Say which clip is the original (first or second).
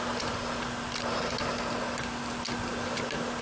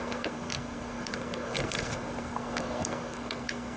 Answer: first